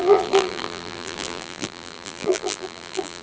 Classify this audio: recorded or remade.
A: remade